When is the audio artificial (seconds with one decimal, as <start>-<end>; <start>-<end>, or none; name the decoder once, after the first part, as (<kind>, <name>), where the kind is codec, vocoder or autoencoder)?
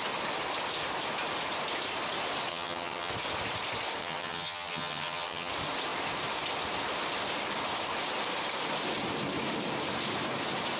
2.5-3.1 (vocoder, HiFi-GAN); 4.0-5.5